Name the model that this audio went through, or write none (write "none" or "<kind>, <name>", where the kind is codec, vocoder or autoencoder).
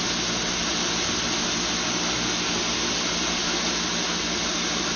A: none